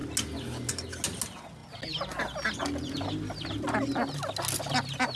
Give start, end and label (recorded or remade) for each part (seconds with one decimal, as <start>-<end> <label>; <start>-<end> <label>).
0.0-5.2 recorded